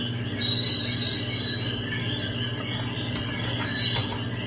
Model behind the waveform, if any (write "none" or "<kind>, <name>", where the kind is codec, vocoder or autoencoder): none